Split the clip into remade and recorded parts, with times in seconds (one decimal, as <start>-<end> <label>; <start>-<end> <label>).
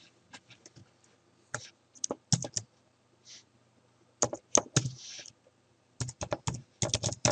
0.0-7.3 recorded